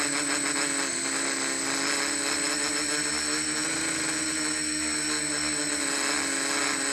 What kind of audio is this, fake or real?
real